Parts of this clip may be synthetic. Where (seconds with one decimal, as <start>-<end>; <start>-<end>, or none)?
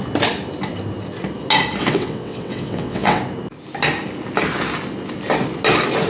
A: 1.8-3.2